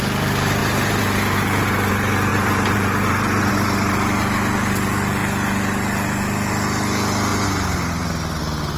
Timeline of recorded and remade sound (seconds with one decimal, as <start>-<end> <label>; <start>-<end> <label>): 0.0-0.6 recorded; 0.6-1.9 remade; 1.9-2.3 recorded; 2.3-3.5 remade; 3.5-7.3 recorded; 7.3-8.4 remade; 8.4-8.8 recorded

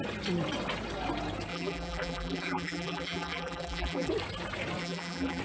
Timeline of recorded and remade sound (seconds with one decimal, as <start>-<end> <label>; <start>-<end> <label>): 0.0-1.5 recorded; 1.5-4.1 remade; 4.1-4.8 recorded; 4.8-5.4 remade

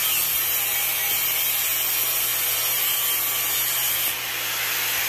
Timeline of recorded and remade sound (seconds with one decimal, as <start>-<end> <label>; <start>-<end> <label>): 0.0-1.5 remade; 1.5-2.3 recorded; 2.3-3.0 remade; 3.0-5.1 recorded

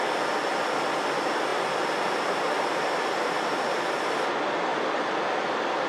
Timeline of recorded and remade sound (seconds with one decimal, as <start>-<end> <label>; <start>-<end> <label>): 0.0-5.9 recorded

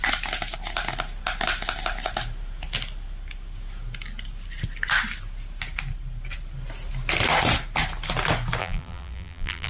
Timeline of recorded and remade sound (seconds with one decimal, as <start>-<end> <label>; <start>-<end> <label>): 0.0-8.6 recorded; 8.6-9.7 remade